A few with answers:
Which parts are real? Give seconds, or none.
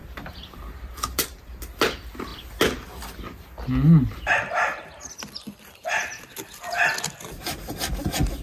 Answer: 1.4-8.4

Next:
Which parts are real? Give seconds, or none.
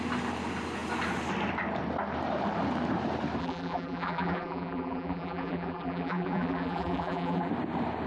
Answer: 0.0-3.4; 7.5-8.1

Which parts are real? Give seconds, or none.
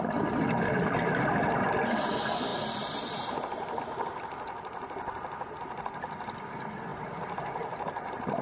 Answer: 0.0-2.5; 3.8-6.9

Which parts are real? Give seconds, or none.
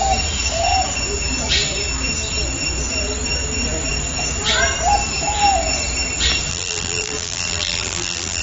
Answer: 0.0-6.5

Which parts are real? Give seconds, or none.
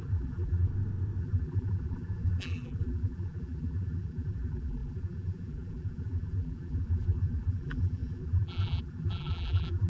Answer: 0.7-1.2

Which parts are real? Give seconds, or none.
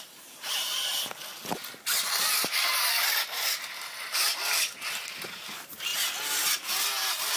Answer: 0.0-7.4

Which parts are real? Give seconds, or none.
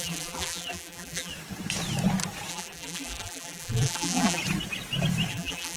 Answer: 1.3-2.5; 4.4-5.3